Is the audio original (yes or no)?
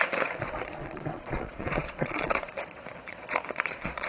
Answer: no